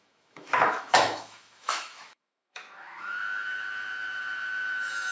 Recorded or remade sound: remade